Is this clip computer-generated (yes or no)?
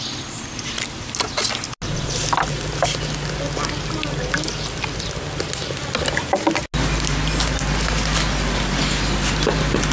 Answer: no